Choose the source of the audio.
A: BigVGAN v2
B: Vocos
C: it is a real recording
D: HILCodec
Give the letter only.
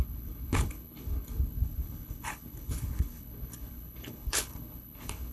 D